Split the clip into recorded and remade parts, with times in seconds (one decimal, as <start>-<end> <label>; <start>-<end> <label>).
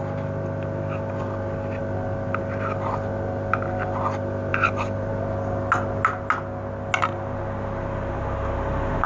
0.0-4.5 recorded; 4.5-5.1 remade; 5.1-9.1 recorded